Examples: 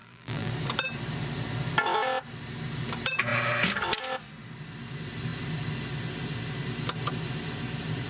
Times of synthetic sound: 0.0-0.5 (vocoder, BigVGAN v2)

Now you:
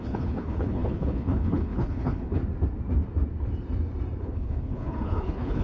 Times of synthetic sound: 0.0-2.4 (codec, HILCodec); 4.2-5.6